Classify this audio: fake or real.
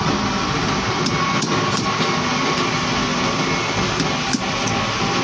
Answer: real